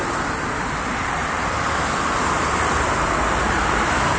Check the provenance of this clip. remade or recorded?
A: recorded